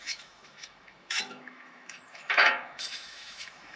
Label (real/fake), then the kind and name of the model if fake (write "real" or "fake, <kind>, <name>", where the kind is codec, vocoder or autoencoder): fake, autoencoder, DAC-VAE